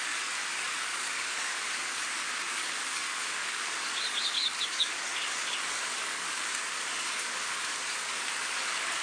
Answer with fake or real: fake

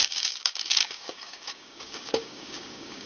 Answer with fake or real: fake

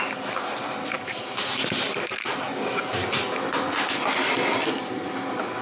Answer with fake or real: real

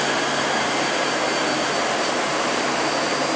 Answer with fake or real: real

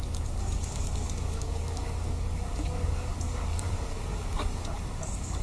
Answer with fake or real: fake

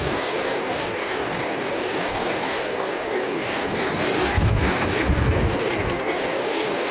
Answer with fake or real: fake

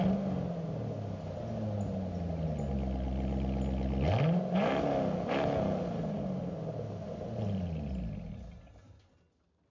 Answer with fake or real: real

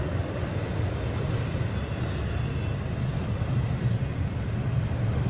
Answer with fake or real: real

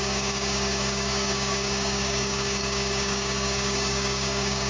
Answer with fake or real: fake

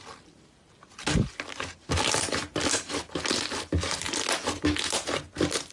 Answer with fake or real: real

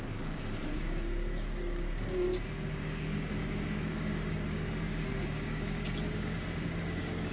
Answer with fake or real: fake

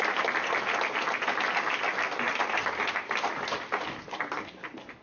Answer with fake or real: real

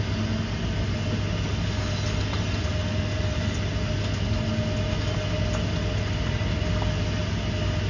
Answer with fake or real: real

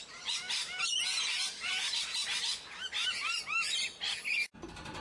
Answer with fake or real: real